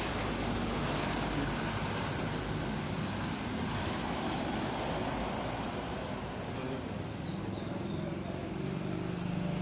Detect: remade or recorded recorded